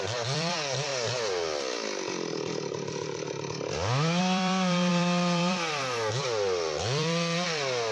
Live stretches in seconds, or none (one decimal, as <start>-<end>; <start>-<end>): 0.9-4.2